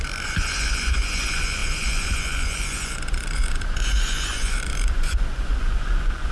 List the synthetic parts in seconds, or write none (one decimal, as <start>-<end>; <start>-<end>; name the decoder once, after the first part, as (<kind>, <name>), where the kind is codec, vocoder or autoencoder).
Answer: 0.0-6.3 (vocoder, Vocos)

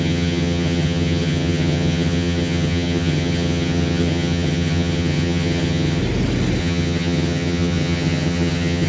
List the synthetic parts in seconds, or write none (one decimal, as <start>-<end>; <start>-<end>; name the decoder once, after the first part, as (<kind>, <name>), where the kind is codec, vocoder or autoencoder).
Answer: 0.0-6.0 (vocoder, HiFi-GAN); 6.6-8.9

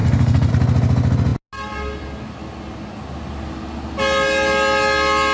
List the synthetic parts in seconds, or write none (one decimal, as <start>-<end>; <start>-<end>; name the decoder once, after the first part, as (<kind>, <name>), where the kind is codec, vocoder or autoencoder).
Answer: 0.0-0.5 (codec, SNAC)

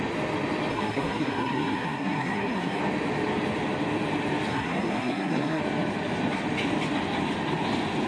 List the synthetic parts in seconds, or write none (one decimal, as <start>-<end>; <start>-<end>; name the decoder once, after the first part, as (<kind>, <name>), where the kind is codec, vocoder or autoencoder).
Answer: 0.7-2.8 (codec, SNAC); 4.5-5.6

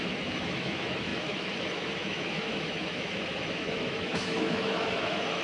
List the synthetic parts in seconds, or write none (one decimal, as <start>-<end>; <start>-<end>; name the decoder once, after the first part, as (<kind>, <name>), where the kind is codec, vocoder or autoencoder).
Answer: 0.0-5.4 (autoencoder, DAC-VAE)